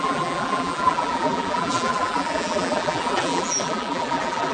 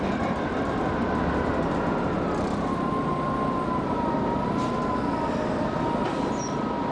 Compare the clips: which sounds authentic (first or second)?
second